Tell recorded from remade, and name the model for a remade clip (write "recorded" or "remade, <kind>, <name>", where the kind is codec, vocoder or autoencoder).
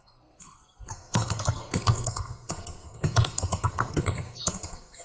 remade, codec, SNAC